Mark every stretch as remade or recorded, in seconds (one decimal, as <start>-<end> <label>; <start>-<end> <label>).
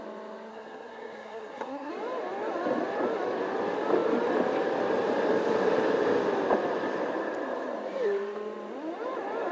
0.0-0.5 recorded; 0.5-1.9 remade; 1.9-9.5 recorded